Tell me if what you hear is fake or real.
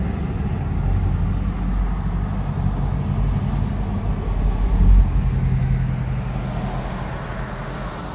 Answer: real